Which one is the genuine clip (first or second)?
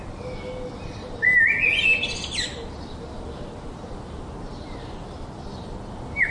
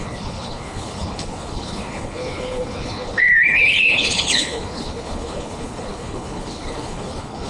first